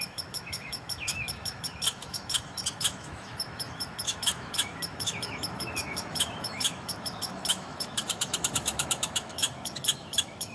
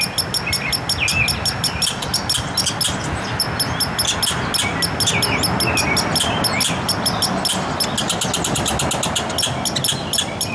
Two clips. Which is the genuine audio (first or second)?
second